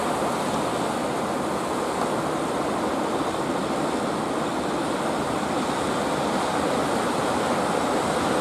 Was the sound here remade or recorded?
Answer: recorded